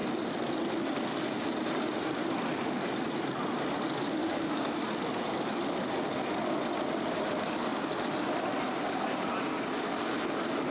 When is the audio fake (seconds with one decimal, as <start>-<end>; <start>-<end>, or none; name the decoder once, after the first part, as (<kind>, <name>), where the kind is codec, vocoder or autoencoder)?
4.2-4.9 (codec, DAC)